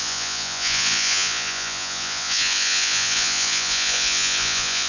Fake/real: fake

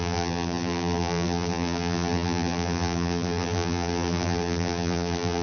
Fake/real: fake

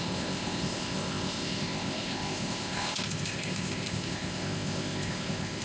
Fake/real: fake